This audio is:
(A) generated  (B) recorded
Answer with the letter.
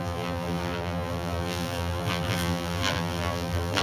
A